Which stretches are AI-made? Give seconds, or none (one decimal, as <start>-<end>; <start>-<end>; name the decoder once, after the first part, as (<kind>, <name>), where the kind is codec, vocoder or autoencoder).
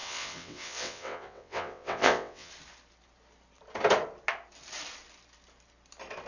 0.0-2.5 (vocoder, WaveNeXt)